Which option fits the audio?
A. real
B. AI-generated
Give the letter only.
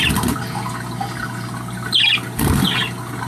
A